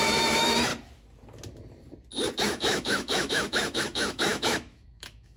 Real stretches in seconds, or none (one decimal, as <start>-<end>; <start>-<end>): 0.7-2.5